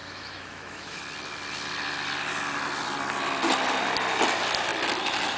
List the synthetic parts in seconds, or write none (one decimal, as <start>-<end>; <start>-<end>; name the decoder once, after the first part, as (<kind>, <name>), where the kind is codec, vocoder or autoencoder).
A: 0.0-1.0 (autoencoder, DAC-VAE)